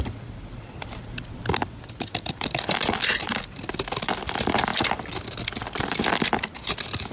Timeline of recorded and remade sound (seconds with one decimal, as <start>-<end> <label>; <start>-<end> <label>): 0.0-7.1 recorded